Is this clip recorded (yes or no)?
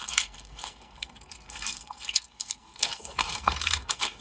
no